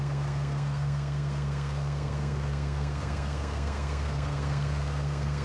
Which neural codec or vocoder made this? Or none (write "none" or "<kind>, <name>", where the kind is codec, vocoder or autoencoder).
codec, SNAC